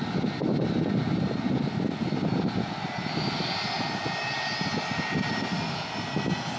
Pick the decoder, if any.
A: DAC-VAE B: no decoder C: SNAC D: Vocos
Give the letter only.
B